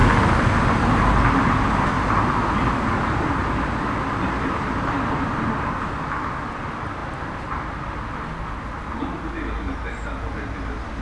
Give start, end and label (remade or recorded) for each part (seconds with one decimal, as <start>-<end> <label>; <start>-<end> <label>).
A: 0.0-11.0 recorded